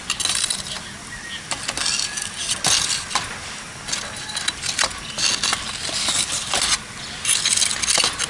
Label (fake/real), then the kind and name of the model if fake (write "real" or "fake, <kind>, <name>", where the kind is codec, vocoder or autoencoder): real